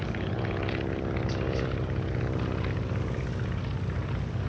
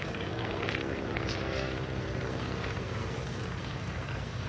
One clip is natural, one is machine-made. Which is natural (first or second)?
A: first